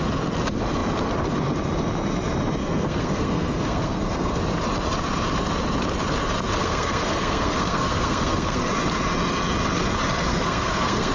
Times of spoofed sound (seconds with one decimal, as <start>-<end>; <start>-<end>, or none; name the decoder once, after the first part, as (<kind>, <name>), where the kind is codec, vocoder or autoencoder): 2.6-4.4 (codec, SNAC); 6.6-8.7; 10.3-11.1